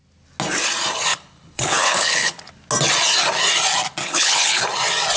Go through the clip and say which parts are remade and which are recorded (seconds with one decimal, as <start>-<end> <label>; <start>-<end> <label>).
0.0-1.1 recorded; 1.1-2.5 remade; 2.5-4.0 recorded; 4.0-4.6 remade; 4.6-5.2 recorded